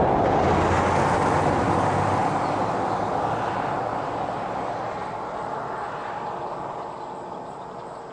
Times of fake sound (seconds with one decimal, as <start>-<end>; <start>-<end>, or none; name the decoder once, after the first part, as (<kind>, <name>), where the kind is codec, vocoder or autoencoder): none